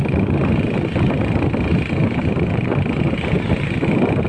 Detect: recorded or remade recorded